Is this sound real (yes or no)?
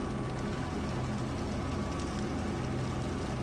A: yes